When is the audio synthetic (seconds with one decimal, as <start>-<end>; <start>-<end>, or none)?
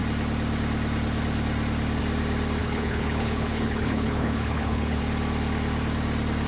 2.6-5.0